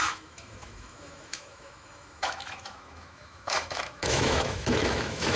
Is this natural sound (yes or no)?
no